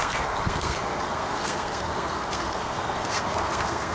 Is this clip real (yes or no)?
no